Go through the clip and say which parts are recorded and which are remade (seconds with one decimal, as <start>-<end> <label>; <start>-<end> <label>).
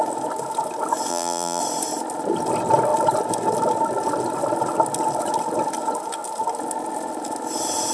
0.0-1.1 recorded; 1.1-1.6 remade; 1.6-7.9 recorded